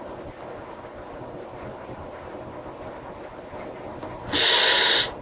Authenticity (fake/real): real